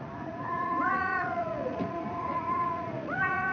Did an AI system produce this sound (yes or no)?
yes